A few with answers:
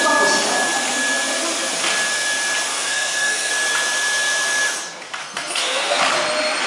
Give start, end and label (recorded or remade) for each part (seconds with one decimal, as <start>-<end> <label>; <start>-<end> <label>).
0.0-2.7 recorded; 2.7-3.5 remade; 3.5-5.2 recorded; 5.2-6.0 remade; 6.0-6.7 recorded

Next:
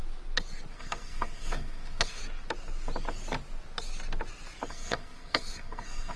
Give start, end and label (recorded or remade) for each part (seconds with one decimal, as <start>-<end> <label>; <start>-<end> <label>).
0.0-0.7 recorded; 0.7-2.2 remade; 2.2-4.7 recorded; 4.7-6.2 remade

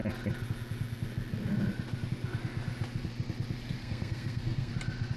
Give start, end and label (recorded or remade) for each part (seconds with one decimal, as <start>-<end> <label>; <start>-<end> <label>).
0.0-3.8 recorded; 3.8-4.7 remade; 4.7-5.2 recorded